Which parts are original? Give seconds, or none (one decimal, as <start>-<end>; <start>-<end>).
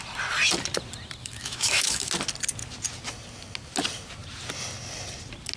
0.0-1.2; 2.1-5.6